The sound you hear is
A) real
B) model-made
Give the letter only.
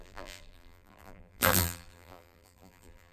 B